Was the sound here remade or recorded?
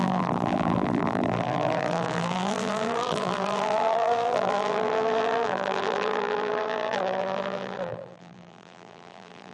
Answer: remade